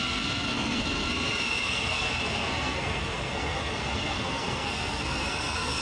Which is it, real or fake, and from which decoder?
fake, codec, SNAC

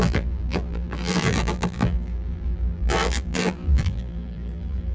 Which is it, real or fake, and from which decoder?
fake, vocoder, BigVGAN v2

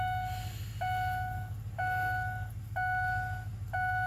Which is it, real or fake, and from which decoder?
real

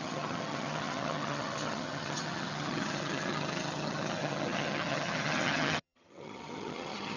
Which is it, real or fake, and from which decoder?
fake, vocoder, HiFi-GAN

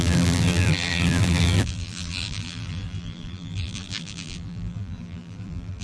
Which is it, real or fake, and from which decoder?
fake, vocoder, BigVGAN v2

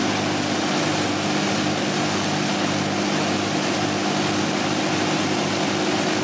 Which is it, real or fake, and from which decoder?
real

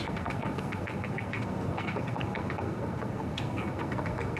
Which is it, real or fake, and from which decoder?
fake, codec, SNAC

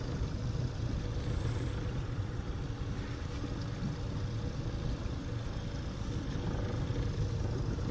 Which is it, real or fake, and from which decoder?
real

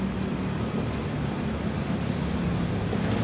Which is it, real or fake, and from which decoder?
real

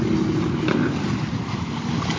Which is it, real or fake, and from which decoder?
real